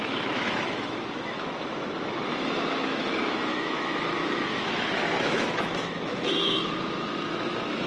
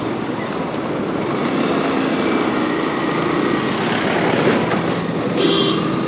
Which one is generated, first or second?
first